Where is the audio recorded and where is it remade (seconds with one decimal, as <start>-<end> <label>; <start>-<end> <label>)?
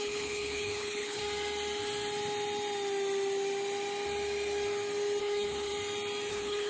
0.0-1.2 remade; 1.2-5.2 recorded; 5.2-5.7 remade; 5.7-6.3 recorded; 6.3-6.7 remade